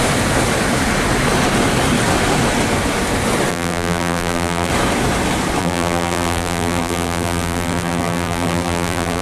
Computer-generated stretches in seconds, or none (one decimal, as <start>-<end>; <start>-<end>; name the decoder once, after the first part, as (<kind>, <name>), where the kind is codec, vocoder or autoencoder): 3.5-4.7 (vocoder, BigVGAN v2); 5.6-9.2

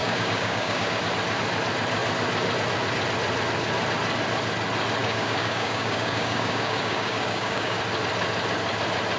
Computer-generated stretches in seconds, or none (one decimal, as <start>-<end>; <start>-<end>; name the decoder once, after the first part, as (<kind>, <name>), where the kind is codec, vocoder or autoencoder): 0.0-1.0 (codec, DAC); 5.0-7.8

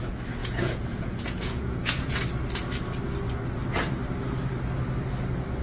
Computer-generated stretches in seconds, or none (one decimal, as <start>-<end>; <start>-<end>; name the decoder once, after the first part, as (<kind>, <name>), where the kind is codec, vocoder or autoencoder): 0.4-2.2 (vocoder, Vocos)

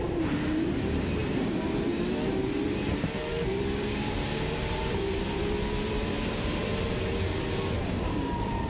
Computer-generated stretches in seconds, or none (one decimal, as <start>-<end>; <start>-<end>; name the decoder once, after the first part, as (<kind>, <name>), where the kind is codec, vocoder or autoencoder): 0.0-8.7 (vocoder, BigVGAN v2)

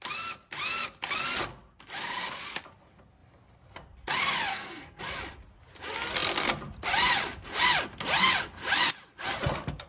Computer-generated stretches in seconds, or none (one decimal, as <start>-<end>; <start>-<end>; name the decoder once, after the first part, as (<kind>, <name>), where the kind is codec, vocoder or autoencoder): 4.5-5.0 (codec, SNAC)